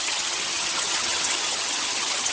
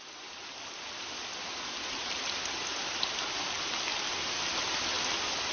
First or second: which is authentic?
second